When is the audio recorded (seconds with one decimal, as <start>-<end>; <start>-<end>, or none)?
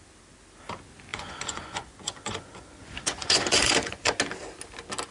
0.0-1.1; 4.2-5.1